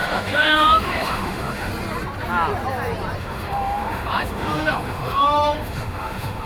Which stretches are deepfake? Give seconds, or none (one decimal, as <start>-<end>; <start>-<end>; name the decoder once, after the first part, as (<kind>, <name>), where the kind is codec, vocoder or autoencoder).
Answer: 0.0-1.7 (autoencoder, DAC-VAE); 3.2-6.5